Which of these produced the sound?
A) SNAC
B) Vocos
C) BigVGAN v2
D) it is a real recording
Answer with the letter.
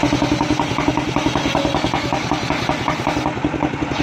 D